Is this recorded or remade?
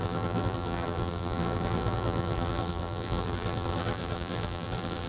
remade